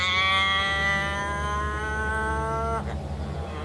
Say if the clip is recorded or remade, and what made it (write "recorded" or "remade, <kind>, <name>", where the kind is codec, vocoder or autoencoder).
recorded